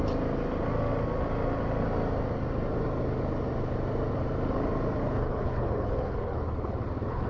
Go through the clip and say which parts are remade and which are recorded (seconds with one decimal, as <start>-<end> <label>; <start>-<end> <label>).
0.0-5.0 recorded; 5.0-7.3 remade